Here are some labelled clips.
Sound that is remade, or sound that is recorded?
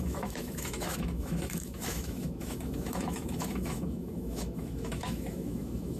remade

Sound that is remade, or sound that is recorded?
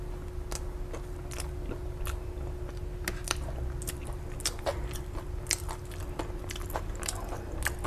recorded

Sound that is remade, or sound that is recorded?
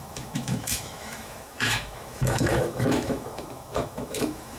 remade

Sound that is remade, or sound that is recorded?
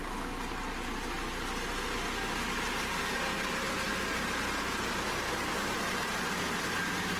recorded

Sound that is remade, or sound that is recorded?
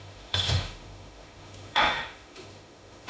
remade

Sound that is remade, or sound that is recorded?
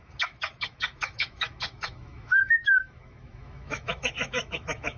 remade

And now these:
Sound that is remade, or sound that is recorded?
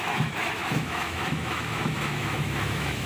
remade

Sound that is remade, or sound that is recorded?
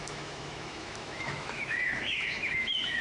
remade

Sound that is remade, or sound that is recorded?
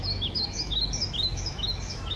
remade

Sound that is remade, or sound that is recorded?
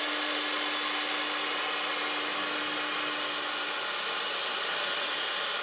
recorded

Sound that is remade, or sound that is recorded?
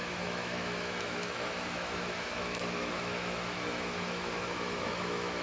remade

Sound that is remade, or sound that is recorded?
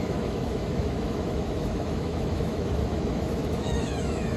remade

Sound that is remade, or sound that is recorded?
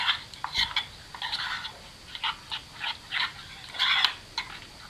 recorded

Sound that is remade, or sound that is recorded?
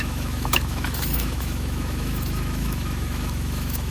remade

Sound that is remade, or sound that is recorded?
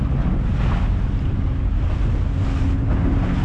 recorded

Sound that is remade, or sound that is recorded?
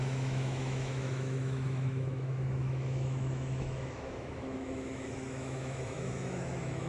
remade